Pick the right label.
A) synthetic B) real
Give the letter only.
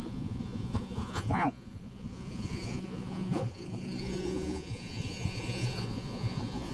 A